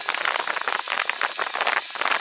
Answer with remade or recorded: recorded